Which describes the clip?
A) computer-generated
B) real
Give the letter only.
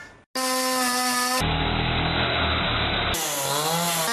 B